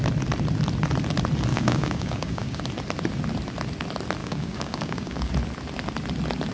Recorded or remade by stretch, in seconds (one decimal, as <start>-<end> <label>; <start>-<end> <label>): 0.0-1.5 recorded; 1.5-2.6 remade; 2.6-4.2 recorded; 4.2-5.3 remade; 5.3-6.5 recorded